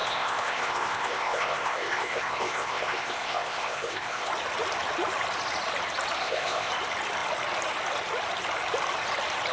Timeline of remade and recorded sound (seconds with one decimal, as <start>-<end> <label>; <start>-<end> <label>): 0.0-4.3 remade; 4.3-6.2 recorded; 6.2-6.7 remade; 6.7-9.5 recorded